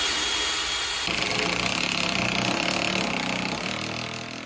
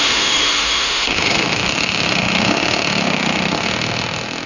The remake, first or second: second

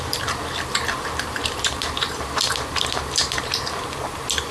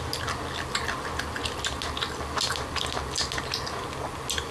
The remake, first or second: first